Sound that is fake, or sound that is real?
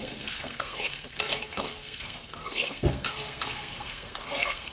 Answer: fake